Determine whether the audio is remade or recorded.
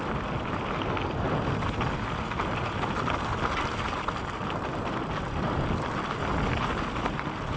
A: recorded